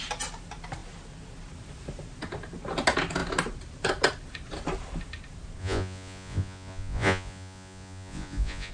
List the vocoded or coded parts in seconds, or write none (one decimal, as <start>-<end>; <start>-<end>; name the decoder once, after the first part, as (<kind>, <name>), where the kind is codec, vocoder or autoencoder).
5.6-8.7 (vocoder, Vocos)